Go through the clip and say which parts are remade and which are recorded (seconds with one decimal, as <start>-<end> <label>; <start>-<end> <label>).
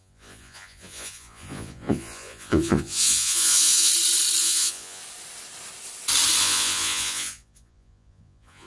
0.0-3.9 remade; 3.9-4.4 recorded; 4.4-5.0 remade; 5.0-6.4 recorded; 6.4-8.7 remade